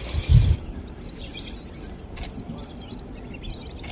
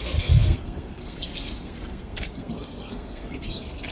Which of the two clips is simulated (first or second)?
second